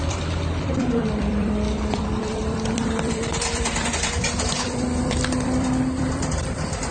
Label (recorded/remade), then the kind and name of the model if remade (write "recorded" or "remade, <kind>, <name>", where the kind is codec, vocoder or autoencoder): remade, vocoder, BigVGAN v2